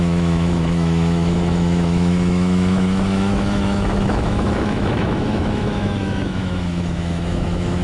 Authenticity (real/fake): fake